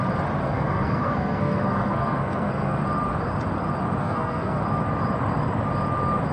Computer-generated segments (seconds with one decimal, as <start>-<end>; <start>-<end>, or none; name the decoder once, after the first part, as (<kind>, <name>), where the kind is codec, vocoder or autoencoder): 0.4-2.8 (codec, SNAC); 4.0-4.6